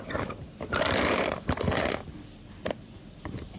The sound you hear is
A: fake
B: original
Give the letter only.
B